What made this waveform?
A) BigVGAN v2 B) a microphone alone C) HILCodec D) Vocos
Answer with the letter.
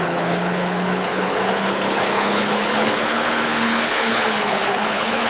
C